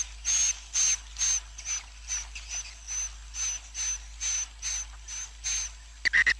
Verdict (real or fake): real